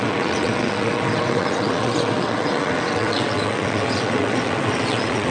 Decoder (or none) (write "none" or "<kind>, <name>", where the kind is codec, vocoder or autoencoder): vocoder, WaveNeXt